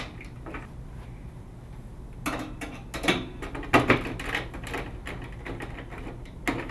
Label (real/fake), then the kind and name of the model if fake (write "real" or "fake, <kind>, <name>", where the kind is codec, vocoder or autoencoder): real